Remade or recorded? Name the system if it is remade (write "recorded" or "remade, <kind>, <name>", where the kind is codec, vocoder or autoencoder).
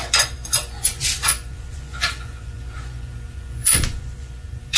remade, vocoder, Vocos